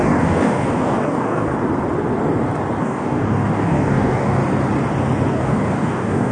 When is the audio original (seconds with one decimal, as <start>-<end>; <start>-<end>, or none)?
1.5-2.8; 4.4-5.3